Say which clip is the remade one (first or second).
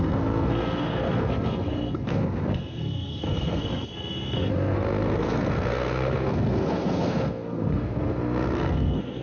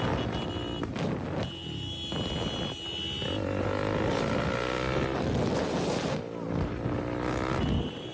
first